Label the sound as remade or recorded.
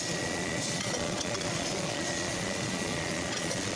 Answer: remade